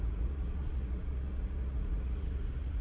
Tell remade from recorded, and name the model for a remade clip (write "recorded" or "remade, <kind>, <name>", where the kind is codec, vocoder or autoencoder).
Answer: remade, vocoder, Vocos